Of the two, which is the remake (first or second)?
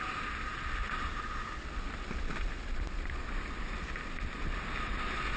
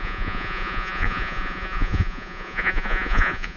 second